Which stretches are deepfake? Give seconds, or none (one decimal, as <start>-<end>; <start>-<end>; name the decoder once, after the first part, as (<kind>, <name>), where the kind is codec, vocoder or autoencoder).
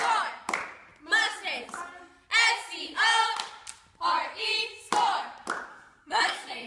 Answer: 5.7-6.7 (codec, SNAC)